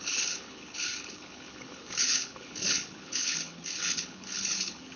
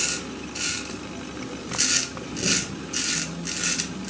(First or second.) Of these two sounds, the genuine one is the second